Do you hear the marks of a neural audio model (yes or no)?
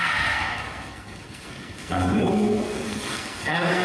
yes